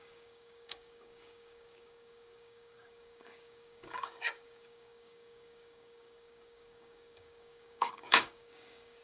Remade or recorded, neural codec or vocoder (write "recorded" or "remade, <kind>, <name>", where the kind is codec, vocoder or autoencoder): remade, codec, DAC